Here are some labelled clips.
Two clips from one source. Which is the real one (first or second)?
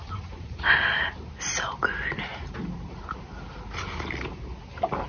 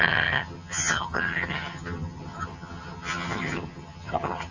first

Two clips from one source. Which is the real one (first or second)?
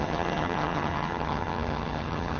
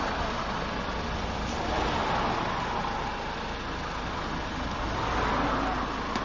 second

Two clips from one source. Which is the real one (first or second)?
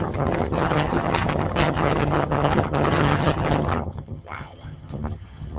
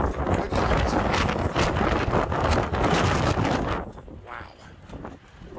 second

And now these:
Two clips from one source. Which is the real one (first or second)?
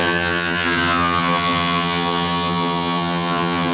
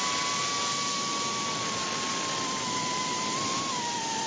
second